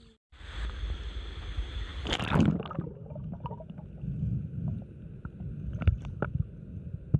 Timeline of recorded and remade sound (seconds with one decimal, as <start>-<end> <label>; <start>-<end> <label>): 0.0-7.2 recorded